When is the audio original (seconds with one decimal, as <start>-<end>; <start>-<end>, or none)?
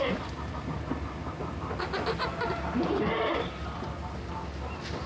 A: 0.0-5.1